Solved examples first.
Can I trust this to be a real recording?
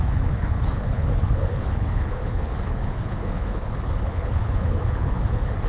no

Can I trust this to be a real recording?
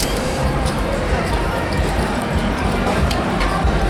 no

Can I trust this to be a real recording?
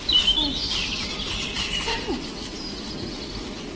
no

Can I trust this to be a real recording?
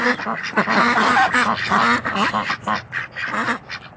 yes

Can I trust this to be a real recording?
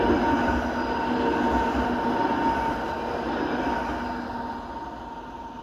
yes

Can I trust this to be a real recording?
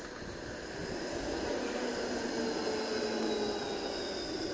yes